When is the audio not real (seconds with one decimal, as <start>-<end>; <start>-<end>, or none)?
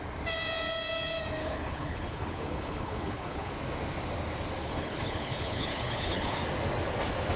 1.4-3.5; 4.6-6.4